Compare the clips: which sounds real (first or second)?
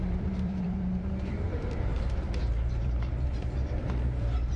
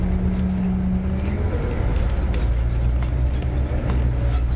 second